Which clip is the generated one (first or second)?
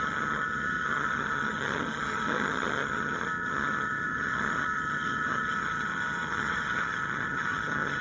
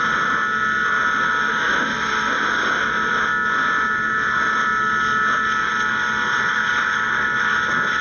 first